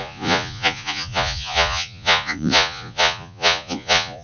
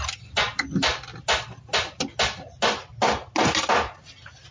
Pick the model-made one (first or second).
first